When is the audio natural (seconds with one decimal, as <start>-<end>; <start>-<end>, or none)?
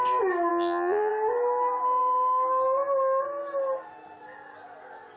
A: 0.0-0.5; 1.1-5.2